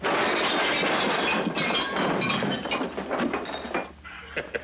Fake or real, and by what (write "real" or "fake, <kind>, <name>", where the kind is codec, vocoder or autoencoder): real